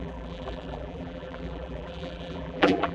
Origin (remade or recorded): remade